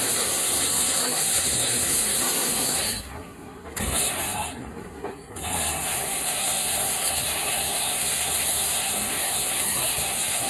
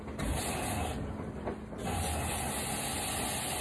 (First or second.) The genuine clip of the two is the second